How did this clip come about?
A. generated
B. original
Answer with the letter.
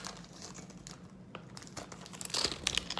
B